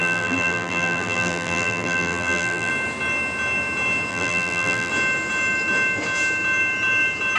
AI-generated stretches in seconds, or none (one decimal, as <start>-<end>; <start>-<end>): 0.0-2.7; 4.1-4.9